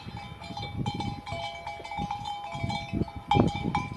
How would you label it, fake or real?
real